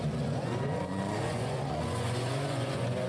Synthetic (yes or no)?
yes